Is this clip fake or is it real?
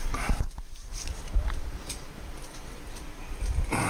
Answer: fake